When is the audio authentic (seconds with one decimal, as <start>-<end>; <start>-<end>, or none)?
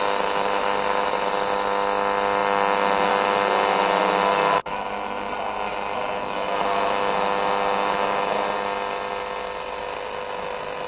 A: 0.0-10.9